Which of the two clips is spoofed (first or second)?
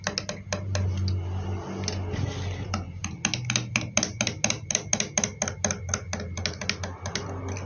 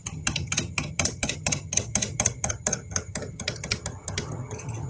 second